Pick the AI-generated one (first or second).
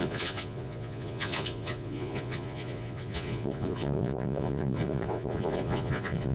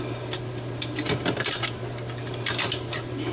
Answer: first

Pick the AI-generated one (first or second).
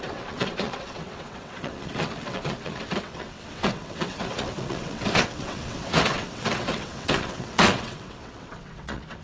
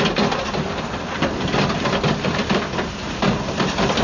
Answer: first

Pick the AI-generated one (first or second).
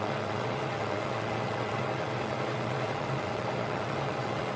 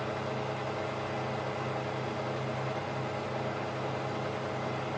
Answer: first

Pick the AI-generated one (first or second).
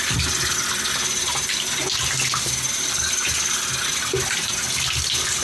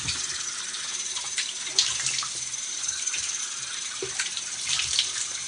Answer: second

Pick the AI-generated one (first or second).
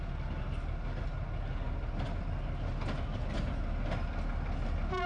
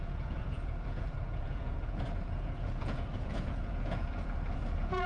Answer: second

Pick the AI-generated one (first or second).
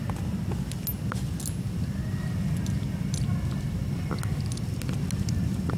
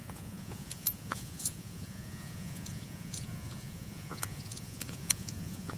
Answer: second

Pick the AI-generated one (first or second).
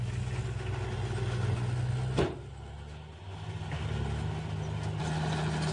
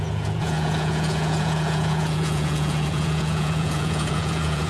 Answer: second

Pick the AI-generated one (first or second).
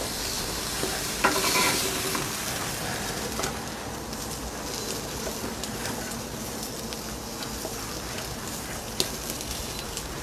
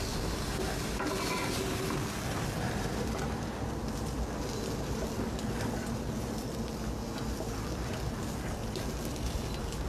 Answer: first